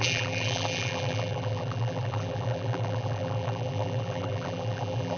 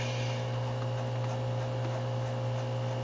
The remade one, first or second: first